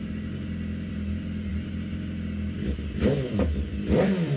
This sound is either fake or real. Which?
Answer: fake